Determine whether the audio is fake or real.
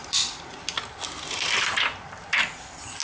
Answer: real